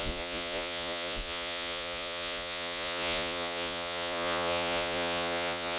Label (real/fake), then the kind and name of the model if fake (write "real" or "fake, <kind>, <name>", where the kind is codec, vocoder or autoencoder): fake, vocoder, Vocos